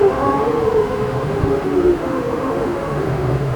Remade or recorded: remade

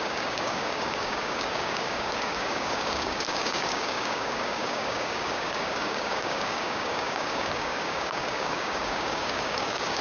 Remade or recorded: remade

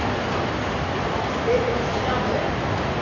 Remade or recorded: recorded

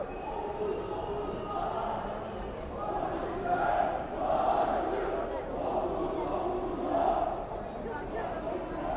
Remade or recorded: recorded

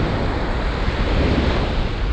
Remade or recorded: recorded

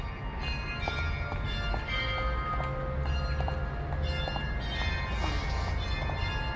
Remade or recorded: recorded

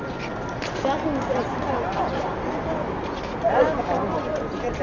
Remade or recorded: recorded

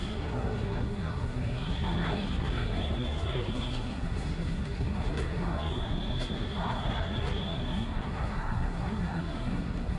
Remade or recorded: remade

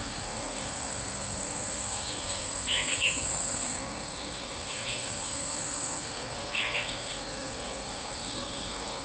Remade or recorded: remade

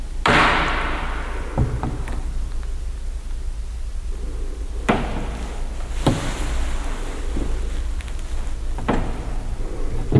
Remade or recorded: recorded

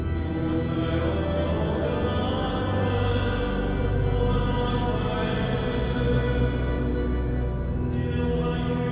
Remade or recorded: recorded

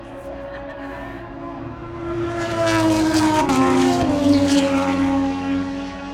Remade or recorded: remade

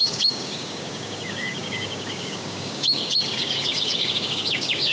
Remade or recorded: remade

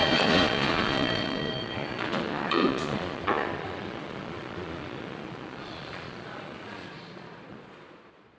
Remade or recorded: remade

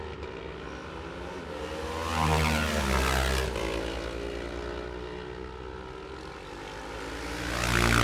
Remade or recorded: recorded